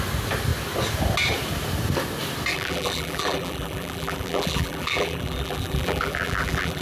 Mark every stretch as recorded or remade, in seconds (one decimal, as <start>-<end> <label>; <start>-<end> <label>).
0.0-2.5 recorded; 2.5-6.8 remade